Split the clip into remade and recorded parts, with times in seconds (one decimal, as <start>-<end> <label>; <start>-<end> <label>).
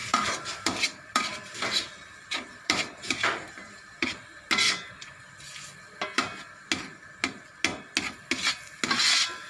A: 0.0-1.6 remade; 1.6-2.0 recorded; 2.0-4.2 remade; 4.2-9.5 recorded